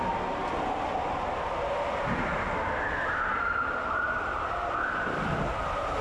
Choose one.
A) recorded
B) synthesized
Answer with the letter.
A